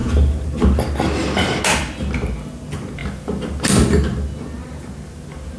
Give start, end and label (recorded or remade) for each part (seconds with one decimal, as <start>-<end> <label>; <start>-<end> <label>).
0.0-1.6 remade; 1.6-3.0 recorded; 3.0-3.7 remade; 3.7-5.6 recorded